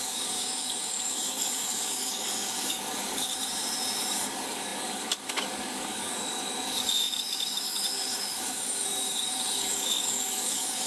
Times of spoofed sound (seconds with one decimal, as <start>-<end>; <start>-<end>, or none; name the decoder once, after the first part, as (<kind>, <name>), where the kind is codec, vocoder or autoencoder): 0.0-3.3 (codec, DAC); 4.1-10.9